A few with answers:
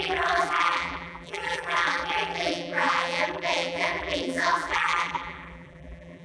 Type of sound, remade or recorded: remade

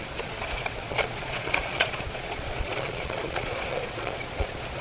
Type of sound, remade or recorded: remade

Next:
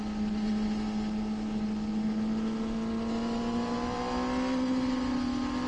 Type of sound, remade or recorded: recorded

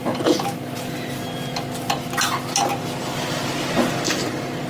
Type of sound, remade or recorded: recorded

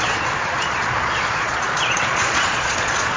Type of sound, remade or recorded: remade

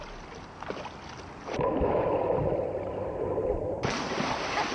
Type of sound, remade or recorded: recorded